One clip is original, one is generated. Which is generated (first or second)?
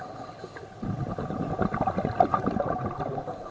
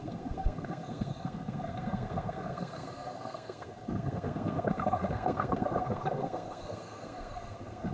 second